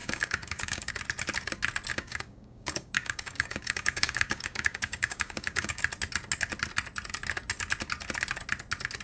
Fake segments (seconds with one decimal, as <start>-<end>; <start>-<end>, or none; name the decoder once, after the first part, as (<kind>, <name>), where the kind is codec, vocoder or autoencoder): 0.0-0.9 (codec, DAC); 1.9-5.8